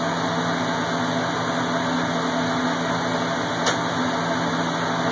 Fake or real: real